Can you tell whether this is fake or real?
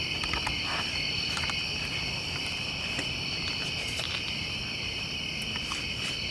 real